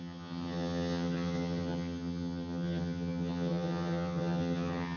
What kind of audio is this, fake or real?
fake